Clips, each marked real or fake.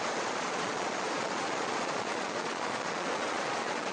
fake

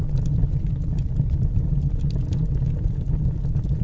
real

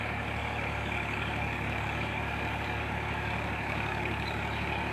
fake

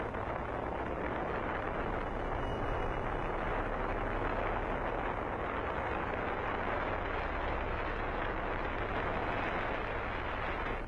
real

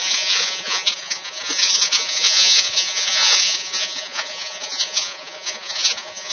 fake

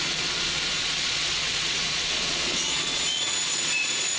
fake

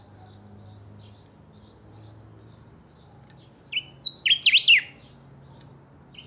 real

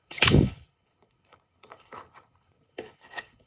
fake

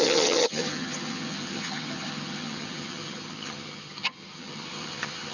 fake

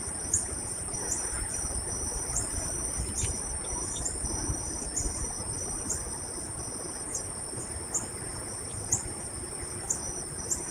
fake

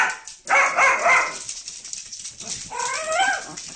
real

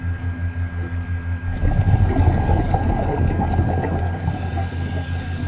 fake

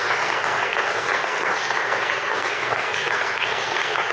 fake